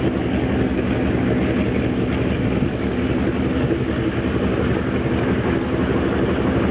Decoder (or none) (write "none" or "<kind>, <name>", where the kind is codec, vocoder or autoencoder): none